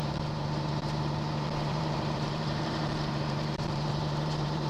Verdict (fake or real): fake